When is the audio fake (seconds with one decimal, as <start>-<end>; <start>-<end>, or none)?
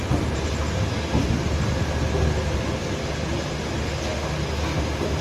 none